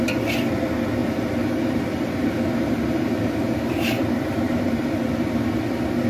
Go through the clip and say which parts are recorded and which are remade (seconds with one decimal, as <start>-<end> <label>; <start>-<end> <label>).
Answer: 0.0-1.0 recorded; 1.0-4.7 remade; 4.7-6.1 recorded